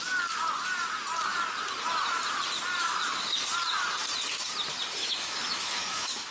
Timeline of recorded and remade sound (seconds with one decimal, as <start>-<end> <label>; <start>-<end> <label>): 0.0-2.8 recorded; 2.8-3.4 remade; 3.4-5.0 recorded; 5.0-6.3 remade